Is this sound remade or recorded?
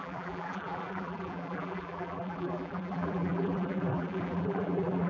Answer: remade